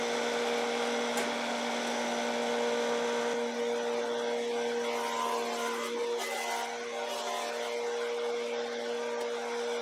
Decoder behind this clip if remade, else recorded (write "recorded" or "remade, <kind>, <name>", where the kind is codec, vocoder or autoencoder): recorded